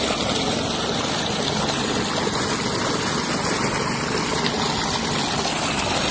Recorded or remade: recorded